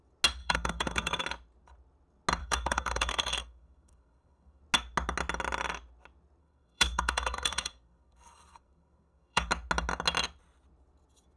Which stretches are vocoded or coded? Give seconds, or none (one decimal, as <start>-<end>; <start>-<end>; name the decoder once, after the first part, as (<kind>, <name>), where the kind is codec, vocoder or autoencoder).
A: 0.4-1.2 (codec, SNAC); 2.4-4.6; 6.4-9.5